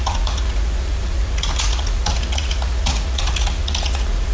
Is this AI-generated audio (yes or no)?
yes